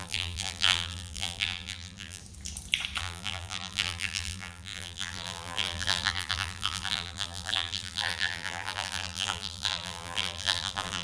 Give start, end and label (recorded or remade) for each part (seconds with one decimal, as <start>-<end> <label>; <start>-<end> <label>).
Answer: 0.0-2.2 remade; 2.2-3.0 recorded; 3.0-11.0 remade